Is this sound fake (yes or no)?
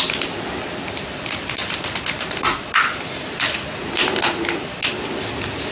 no